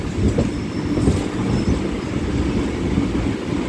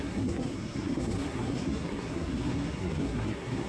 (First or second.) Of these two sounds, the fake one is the second